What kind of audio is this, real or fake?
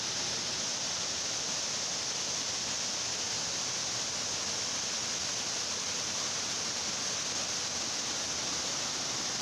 real